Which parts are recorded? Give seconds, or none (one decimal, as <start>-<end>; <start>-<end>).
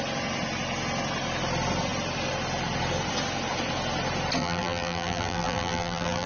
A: 0.0-4.4